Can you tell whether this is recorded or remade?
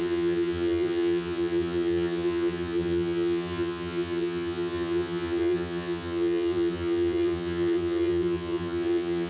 remade